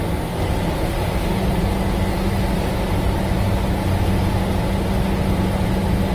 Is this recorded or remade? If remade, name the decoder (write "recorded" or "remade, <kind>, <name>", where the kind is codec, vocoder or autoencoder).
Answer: recorded